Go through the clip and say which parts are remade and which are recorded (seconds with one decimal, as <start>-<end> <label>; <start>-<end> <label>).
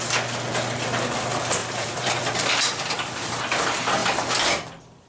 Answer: 0.0-1.6 recorded; 1.6-3.3 remade; 3.3-5.1 recorded